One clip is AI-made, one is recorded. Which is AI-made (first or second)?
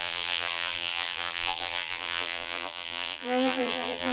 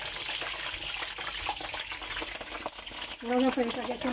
first